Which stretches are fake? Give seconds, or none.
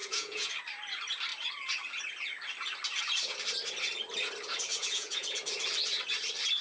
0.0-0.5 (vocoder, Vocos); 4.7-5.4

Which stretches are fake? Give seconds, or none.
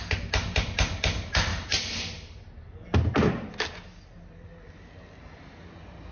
none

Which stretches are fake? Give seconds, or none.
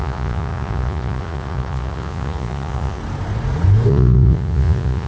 0.0-3.0 (vocoder, Vocos); 3.9-5.1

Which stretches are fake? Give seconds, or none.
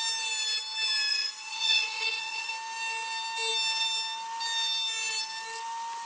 1.1-2.5 (vocoder, Vocos)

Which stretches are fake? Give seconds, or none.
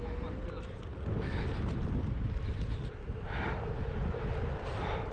none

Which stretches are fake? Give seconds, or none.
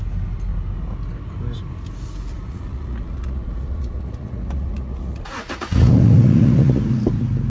2.3-6.8 (vocoder, Vocos)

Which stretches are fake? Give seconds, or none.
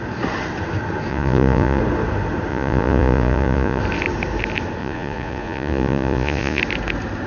1.1-1.8 (vocoder, Vocos); 2.5-3.8; 4.8-6.6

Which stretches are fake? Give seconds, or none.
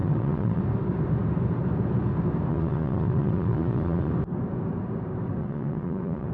0.0-0.6 (vocoder, Vocos); 2.5-4.1; 5.4-6.3